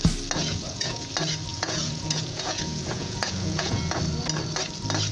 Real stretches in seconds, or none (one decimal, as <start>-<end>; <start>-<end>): 0.0-0.4; 1.1-1.5; 4.0-5.1

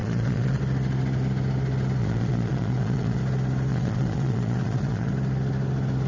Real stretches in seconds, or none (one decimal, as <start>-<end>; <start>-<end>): 0.6-2.0; 3.2-3.7; 5.1-6.1

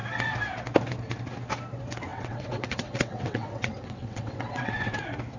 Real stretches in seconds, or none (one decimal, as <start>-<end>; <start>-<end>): 0.0-2.1; 5.0-5.4

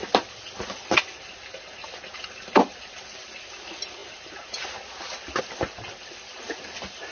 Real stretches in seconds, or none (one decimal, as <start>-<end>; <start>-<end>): 0.0-7.1